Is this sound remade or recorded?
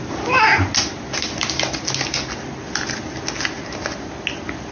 recorded